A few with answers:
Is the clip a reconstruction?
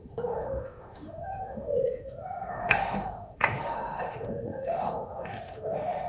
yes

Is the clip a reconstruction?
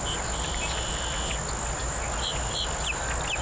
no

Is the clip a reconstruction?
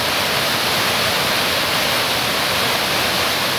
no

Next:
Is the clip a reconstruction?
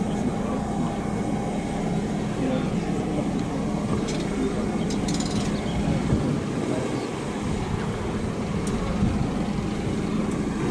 no